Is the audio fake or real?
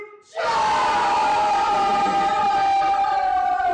real